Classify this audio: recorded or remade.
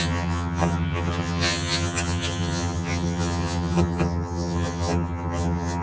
remade